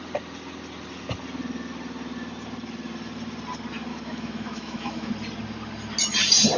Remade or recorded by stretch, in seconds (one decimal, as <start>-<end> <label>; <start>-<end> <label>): 0.0-3.9 recorded; 3.9-5.1 remade; 5.1-6.6 recorded